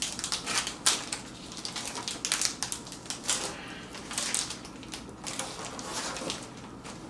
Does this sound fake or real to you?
real